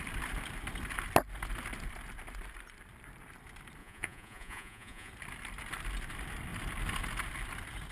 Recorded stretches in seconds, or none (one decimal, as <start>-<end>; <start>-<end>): 0.0-3.8; 5.1-7.9